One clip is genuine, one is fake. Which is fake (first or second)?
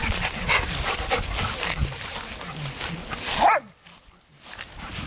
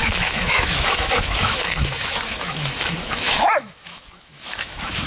second